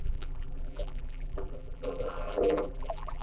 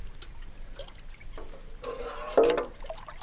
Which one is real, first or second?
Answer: second